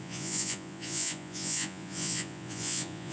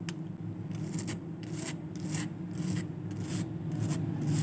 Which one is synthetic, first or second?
first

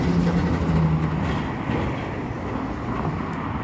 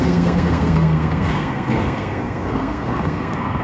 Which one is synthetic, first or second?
second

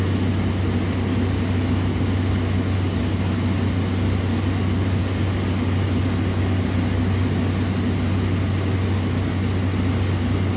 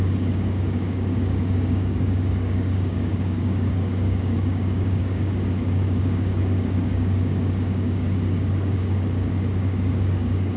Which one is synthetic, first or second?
second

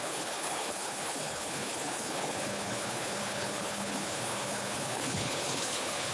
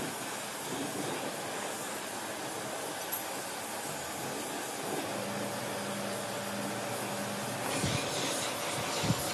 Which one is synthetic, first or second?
first